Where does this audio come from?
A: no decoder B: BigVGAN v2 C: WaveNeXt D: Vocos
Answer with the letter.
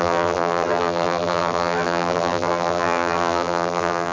B